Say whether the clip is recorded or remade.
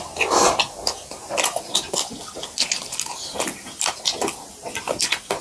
recorded